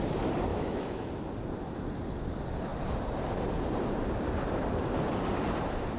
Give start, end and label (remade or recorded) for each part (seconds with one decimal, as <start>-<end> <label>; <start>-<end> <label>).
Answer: 0.0-0.5 recorded; 0.5-1.1 remade; 1.1-6.0 recorded